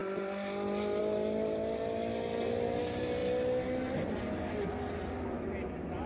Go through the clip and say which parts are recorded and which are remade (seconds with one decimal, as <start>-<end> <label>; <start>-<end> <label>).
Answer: 0.0-6.1 recorded